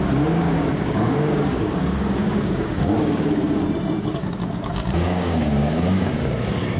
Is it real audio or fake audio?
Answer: fake